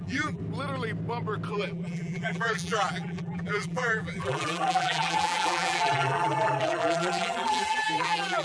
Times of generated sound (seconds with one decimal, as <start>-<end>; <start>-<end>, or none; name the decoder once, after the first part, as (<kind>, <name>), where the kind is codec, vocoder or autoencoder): 0.0-0.4 (vocoder, BigVGAN v2); 1.5-8.4